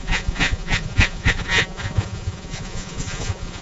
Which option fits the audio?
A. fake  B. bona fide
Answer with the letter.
A